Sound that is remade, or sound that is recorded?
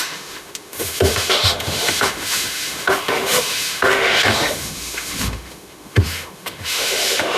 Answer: remade